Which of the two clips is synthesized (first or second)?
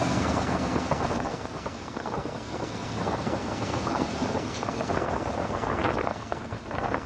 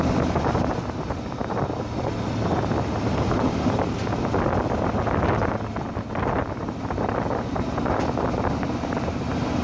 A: first